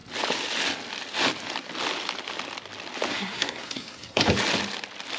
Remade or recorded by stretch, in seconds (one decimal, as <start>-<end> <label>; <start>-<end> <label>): 0.0-3.1 recorded; 3.1-4.2 remade; 4.2-5.2 recorded